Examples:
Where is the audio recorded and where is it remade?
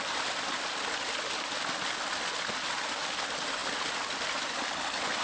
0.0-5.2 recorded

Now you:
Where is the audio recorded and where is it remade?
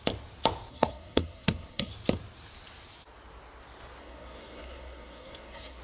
0.0-0.7 recorded; 0.7-1.9 remade; 1.9-4.0 recorded; 4.0-5.8 remade